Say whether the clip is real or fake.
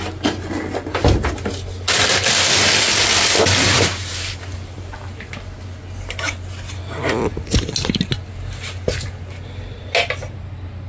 real